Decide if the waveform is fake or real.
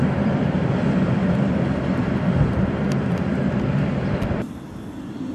fake